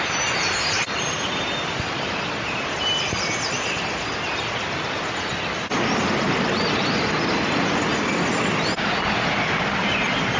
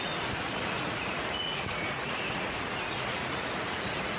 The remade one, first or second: second